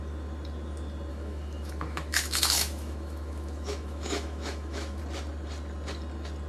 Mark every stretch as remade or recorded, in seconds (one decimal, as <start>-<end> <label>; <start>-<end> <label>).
0.0-1.1 recorded; 1.1-5.0 remade; 5.0-6.5 recorded